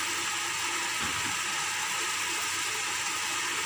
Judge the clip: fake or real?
real